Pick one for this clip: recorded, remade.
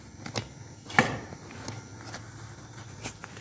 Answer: recorded